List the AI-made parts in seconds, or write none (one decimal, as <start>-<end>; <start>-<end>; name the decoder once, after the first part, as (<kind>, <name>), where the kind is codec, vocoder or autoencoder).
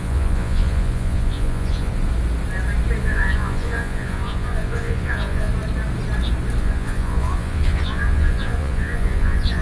0.0-1.9 (vocoder, Vocos); 3.0-5.5; 6.6-9.6